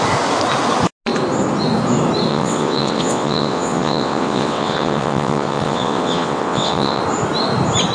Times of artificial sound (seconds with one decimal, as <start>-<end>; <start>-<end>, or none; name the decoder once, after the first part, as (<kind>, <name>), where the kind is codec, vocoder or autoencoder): 2.3-7.0 (vocoder, WaveNeXt)